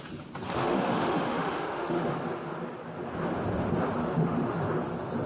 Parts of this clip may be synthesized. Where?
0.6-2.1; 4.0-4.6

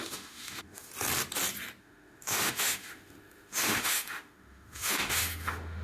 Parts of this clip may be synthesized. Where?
0.0-0.9; 1.8-5.8

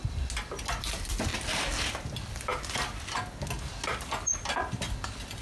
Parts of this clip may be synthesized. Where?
none